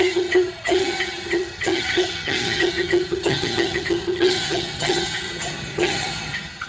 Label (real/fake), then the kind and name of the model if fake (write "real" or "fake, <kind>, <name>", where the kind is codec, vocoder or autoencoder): fake, vocoder, HiFi-GAN